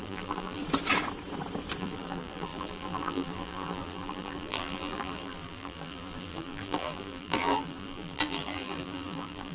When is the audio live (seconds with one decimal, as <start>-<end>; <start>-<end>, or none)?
0.6-1.8

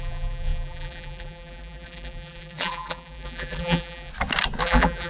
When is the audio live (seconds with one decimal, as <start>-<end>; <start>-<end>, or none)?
4.1-4.6